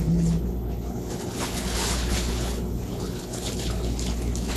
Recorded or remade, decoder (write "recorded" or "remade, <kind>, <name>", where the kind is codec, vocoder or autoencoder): remade, codec, HILCodec